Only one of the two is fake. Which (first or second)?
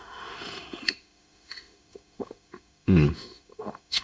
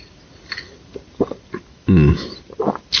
first